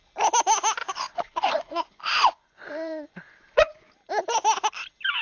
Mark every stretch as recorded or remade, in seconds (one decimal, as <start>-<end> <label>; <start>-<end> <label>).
0.0-0.8 recorded; 0.8-3.9 remade; 3.9-5.2 recorded